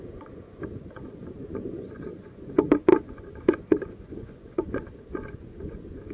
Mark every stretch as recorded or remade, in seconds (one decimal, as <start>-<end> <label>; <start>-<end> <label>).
0.0-6.1 remade